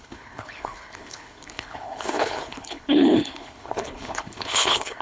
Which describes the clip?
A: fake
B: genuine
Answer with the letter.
A